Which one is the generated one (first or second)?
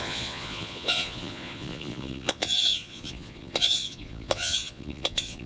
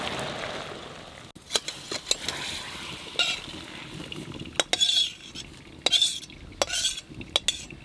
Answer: first